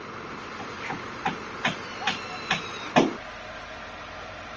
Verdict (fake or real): real